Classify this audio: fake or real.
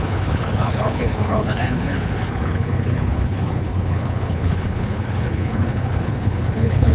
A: fake